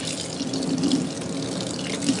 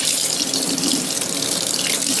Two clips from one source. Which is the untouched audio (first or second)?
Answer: first